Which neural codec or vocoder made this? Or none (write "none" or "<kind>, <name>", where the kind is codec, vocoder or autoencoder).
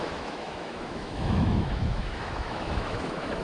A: autoencoder, DAC-VAE